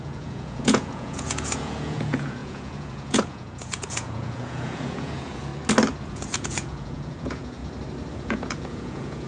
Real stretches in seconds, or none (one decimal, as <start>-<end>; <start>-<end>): 5.5-6.0; 7.6-8.1